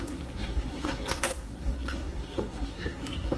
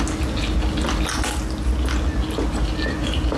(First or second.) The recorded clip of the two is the second